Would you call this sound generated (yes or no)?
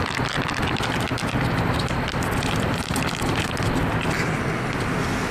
no